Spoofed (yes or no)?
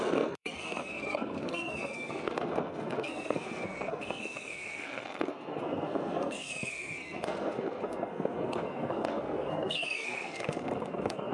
yes